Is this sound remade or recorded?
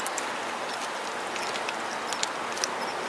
recorded